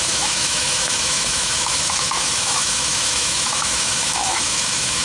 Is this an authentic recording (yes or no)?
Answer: no